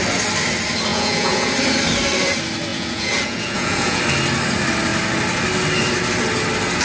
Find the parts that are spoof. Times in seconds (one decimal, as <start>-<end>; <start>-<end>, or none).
0.9-1.5; 2.7-4.0